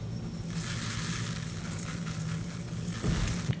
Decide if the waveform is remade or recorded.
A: recorded